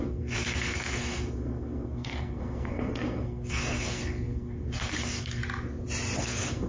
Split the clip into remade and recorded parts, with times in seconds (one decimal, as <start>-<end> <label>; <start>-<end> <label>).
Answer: 0.0-5.4 remade; 5.4-6.2 recorded; 6.2-6.7 remade

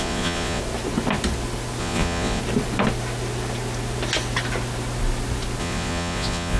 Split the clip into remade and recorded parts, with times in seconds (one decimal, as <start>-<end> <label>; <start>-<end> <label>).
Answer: 0.0-0.6 remade; 0.6-1.8 recorded; 1.8-2.4 remade; 2.4-5.6 recorded; 5.6-6.6 remade

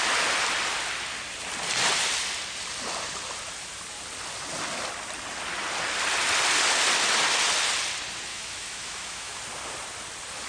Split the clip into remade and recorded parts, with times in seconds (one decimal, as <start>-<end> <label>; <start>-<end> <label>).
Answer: 0.0-8.3 recorded; 8.3-9.4 remade; 9.4-10.5 recorded

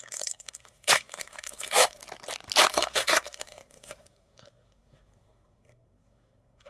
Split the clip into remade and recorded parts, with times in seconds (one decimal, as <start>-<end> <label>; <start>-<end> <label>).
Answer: 0.0-2.0 remade; 2.0-2.7 recorded; 2.7-6.7 remade